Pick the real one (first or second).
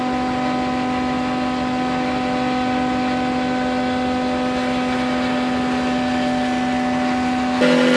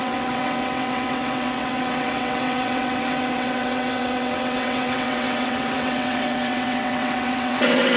first